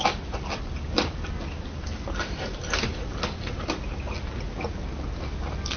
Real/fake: real